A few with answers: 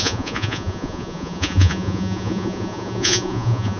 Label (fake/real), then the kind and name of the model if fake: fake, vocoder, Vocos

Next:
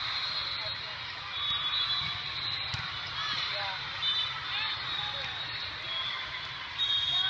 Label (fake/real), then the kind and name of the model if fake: real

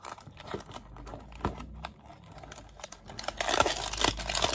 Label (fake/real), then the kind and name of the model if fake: real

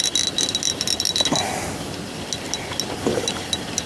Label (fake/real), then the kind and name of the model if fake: real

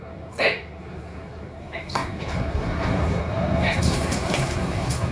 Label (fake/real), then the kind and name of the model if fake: fake, codec, SNAC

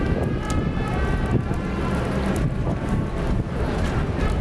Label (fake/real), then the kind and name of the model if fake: real